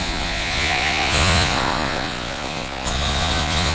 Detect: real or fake fake